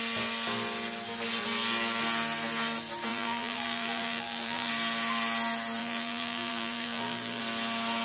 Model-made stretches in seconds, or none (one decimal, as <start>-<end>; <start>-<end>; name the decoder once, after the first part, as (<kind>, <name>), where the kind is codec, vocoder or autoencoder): 3.1-4.7 (vocoder, BigVGAN v2); 5.8-7.4